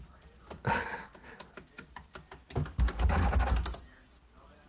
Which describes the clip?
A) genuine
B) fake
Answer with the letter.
A